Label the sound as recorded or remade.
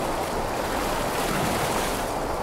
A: recorded